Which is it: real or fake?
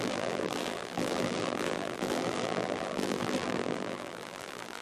fake